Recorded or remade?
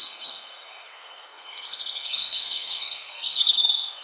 remade